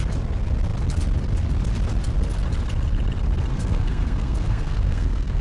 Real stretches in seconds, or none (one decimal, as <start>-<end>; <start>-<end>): 0.0-3.5